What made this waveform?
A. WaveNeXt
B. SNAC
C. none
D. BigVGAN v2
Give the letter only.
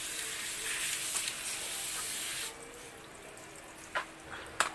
C